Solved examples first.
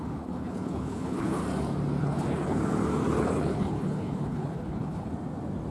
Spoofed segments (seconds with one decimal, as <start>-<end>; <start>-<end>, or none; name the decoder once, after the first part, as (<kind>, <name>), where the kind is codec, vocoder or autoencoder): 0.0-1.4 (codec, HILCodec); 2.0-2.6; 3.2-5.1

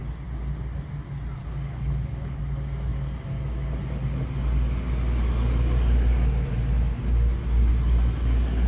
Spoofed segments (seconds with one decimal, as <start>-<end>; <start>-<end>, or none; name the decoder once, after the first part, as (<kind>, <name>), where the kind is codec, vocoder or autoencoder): 1.4-2.4 (codec, HILCodec)

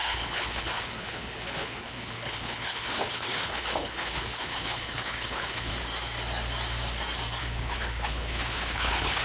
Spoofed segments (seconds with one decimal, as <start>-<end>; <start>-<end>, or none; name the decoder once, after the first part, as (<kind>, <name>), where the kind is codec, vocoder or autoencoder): 0.0-5.7 (codec, HILCodec); 7.4-9.2